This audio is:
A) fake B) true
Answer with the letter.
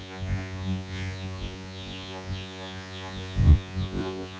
A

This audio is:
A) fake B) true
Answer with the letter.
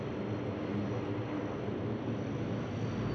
B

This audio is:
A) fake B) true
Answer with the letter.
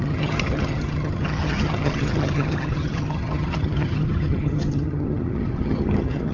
A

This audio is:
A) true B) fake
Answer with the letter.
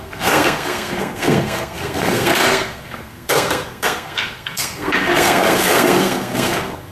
B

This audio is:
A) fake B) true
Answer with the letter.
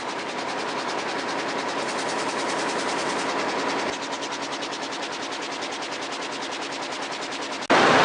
B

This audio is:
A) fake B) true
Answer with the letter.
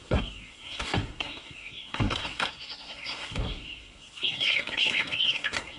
A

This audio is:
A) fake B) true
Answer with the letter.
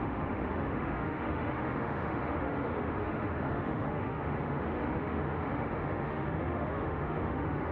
A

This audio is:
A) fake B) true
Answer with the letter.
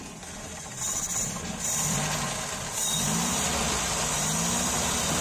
B